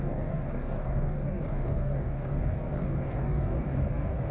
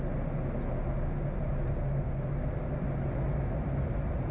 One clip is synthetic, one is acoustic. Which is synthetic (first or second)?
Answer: first